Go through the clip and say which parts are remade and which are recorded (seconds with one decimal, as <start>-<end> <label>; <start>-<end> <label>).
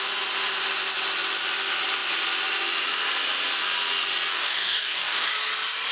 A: 0.0-4.3 recorded; 4.3-5.3 remade; 5.3-5.9 recorded